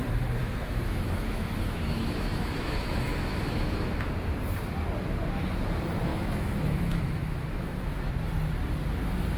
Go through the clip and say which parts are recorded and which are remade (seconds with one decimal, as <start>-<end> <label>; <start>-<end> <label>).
0.0-0.4 recorded; 0.4-4.1 remade; 4.1-6.1 recorded; 6.1-8.1 remade; 8.1-9.4 recorded